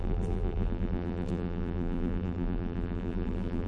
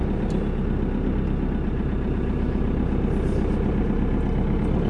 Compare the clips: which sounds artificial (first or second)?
first